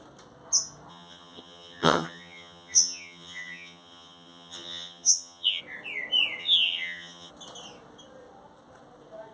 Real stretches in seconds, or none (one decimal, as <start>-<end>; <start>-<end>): 0.0-0.9; 5.6-6.4; 7.3-9.3